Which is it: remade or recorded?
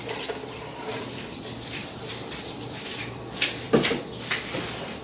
remade